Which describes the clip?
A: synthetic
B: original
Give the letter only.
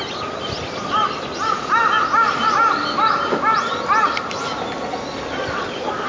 B